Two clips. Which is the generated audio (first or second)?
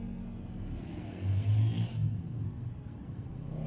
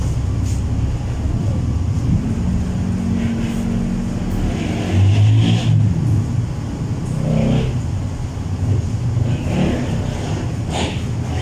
first